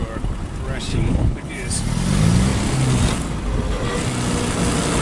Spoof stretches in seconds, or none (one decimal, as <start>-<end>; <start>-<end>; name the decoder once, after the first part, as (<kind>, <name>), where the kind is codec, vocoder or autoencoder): 0.9-1.5 (codec, HILCodec)